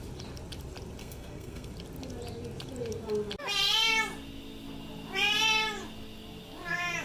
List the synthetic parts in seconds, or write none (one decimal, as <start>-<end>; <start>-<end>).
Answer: 1.0-1.7